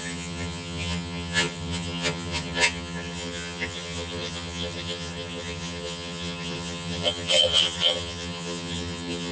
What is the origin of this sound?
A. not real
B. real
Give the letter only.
A